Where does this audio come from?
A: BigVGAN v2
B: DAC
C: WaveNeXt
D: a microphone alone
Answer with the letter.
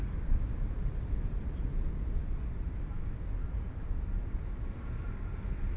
D